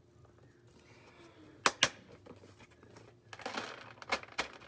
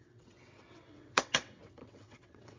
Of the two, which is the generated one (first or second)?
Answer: second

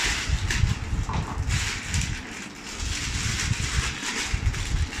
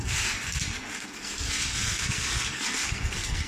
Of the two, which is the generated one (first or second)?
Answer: second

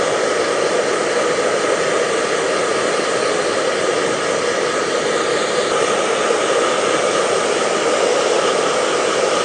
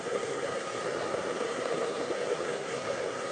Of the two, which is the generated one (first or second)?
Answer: second